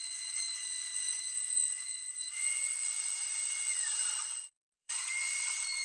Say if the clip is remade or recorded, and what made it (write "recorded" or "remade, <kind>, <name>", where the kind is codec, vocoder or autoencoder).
remade, vocoder, Vocos